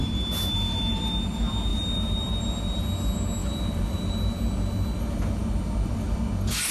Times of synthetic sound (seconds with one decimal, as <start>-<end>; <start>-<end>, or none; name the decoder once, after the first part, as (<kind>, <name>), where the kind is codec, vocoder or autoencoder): 1.7-2.4 (vocoder, BigVGAN v2); 3.4-4.1; 5.4-6.3